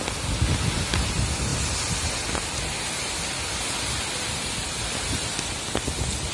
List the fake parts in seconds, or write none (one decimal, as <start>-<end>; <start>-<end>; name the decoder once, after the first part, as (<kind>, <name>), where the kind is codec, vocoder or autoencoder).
none